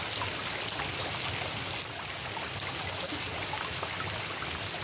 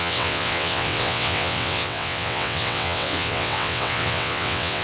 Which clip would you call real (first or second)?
first